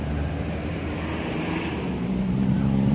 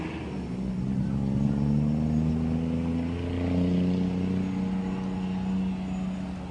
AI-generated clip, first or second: first